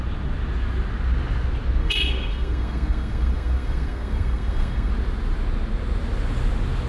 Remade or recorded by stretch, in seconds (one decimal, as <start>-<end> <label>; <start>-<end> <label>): 0.0-1.8 recorded; 1.8-4.9 remade; 4.9-6.9 recorded